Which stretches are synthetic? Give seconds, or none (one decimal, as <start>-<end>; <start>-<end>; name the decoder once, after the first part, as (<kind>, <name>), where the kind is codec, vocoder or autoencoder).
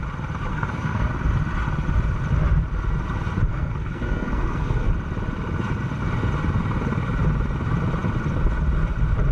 0.5-1.1 (codec, SNAC); 3.5-4.9